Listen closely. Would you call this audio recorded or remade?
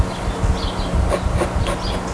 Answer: recorded